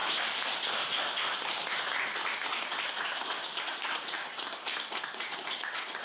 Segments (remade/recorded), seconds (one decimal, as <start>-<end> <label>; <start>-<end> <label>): 0.0-3.6 recorded; 3.6-4.2 remade; 4.2-5.0 recorded; 5.0-6.0 remade